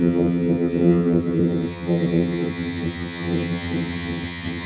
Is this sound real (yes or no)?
no